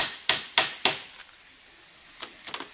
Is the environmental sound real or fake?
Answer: real